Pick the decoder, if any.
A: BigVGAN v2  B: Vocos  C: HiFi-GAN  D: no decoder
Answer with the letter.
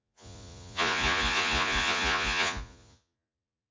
B